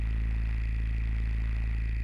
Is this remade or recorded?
recorded